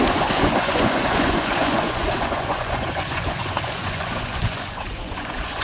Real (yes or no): no